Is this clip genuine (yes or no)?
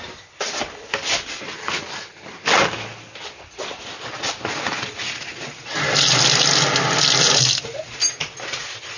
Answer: yes